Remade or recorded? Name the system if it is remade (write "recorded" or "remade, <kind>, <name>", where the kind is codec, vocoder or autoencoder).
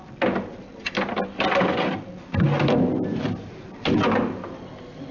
remade, vocoder, BigVGAN v2